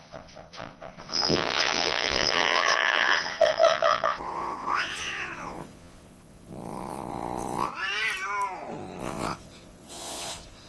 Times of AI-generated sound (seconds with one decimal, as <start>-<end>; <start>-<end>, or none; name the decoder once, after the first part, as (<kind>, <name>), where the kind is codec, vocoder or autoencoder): 0.0-7.7 (vocoder, Vocos); 9.0-10.7